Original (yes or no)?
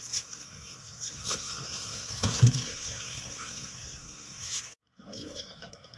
no